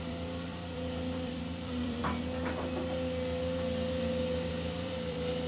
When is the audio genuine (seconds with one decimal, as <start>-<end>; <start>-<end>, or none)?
2.0-4.5